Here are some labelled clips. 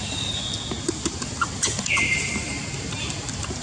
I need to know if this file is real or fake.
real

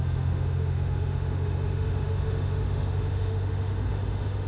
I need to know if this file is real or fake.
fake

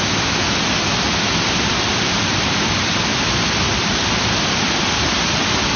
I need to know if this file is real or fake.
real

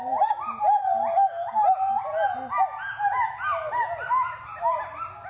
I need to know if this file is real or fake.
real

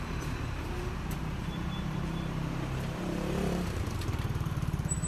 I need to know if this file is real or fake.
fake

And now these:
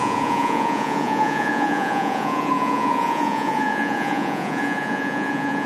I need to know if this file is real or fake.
fake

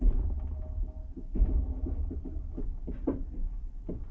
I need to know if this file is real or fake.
real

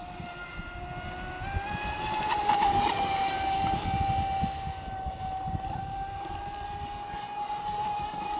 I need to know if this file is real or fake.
real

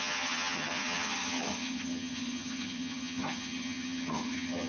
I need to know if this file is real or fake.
fake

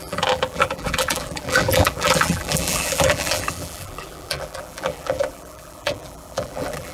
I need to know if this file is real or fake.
fake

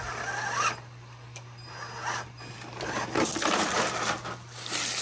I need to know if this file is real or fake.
real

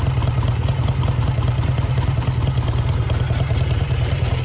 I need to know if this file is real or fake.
fake